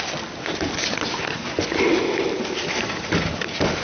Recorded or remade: recorded